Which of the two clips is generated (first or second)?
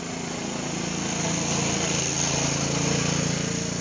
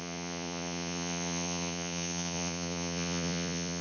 second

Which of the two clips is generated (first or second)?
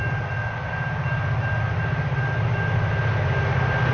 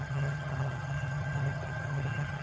second